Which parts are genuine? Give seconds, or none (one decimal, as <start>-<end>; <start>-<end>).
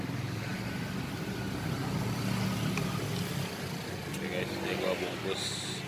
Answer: 0.0-5.9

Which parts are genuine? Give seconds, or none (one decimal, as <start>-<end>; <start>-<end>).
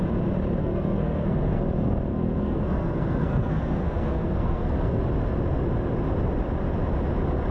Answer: 0.0-0.6; 1.6-2.1; 5.0-7.5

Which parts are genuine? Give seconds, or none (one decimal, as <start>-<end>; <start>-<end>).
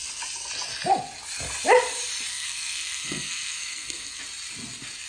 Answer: 0.0-2.3; 4.2-5.1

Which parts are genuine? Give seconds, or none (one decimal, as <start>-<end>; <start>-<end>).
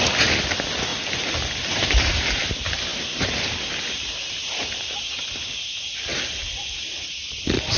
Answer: 0.0-0.9; 2.2-2.9; 5.0-6.1